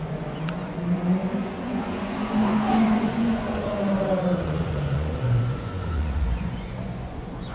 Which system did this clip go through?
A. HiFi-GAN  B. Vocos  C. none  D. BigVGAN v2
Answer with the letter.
B